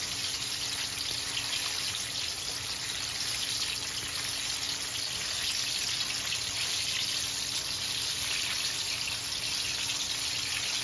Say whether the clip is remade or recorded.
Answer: recorded